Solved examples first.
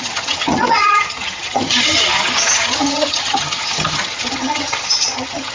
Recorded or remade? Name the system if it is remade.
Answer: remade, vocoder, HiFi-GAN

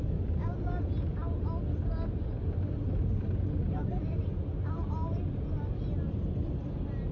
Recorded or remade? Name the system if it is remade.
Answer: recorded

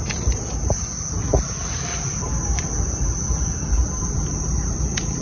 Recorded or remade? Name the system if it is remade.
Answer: remade, vocoder, BigVGAN v2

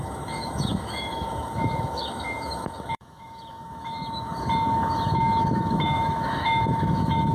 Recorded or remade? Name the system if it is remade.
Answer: remade, autoencoder, DAC-VAE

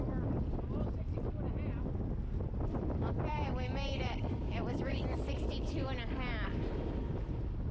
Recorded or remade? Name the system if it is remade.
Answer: recorded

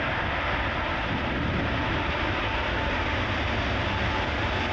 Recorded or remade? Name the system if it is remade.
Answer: recorded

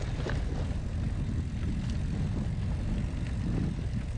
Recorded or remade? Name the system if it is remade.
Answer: recorded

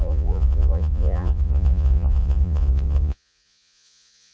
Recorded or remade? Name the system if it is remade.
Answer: remade, vocoder, Vocos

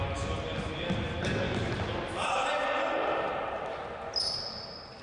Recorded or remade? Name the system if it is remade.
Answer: recorded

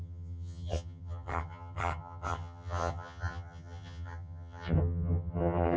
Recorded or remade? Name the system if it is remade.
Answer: remade, vocoder, HiFi-GAN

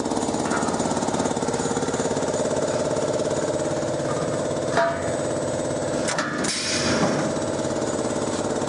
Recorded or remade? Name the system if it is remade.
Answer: recorded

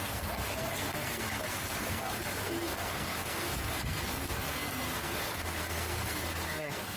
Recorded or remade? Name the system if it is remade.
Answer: remade, codec, SNAC